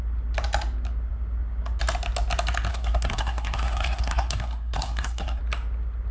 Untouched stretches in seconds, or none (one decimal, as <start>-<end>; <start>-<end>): 0.0-2.7; 5.4-6.1